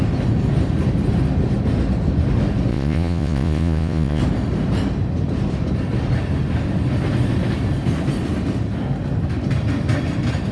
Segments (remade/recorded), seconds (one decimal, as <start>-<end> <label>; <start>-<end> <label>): 0.0-2.7 recorded; 2.7-4.2 remade; 4.2-10.5 recorded